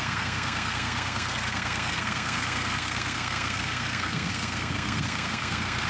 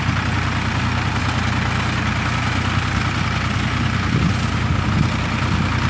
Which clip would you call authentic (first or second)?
second